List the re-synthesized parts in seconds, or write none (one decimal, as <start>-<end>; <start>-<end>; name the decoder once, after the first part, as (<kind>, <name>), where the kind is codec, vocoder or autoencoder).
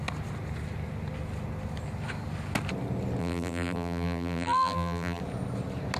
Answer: 3.2-5.2 (vocoder, BigVGAN v2)